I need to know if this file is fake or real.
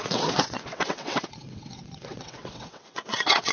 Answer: fake